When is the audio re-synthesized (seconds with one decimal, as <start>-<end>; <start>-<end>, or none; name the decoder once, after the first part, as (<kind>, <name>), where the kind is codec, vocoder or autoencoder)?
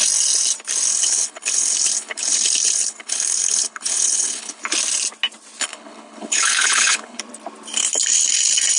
0.9-4.6 (codec, HILCodec); 5.6-7.2